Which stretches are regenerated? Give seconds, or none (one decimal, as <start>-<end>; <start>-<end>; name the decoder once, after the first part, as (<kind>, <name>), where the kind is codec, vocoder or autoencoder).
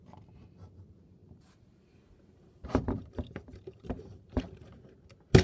1.2-4.4 (vocoder, BigVGAN v2)